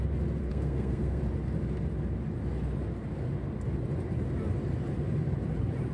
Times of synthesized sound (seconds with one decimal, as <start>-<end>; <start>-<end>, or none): 0.5-1.2